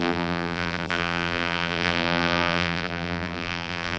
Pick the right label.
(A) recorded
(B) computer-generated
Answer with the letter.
B